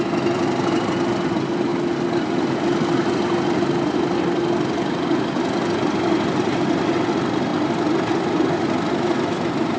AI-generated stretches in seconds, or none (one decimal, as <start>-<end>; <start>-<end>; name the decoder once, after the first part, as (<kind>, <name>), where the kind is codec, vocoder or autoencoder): none